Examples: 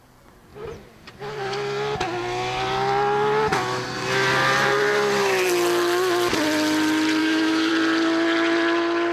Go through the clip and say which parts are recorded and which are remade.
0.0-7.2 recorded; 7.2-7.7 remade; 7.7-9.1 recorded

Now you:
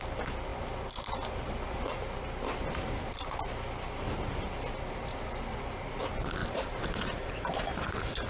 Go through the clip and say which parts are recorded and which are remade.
0.0-6.4 recorded; 6.4-7.9 remade; 7.9-8.3 recorded

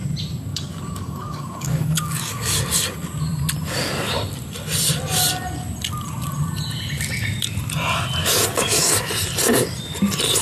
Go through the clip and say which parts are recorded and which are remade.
0.0-0.5 recorded; 0.5-2.6 remade; 2.6-8.2 recorded; 8.2-9.1 remade; 9.1-10.4 recorded

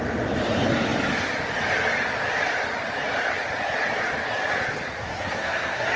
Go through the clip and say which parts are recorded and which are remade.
0.0-4.9 recorded; 4.9-6.0 remade